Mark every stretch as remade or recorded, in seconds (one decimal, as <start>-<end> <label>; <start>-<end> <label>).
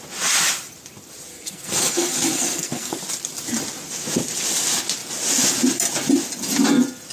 0.0-1.3 recorded; 1.3-3.0 remade; 3.0-7.1 recorded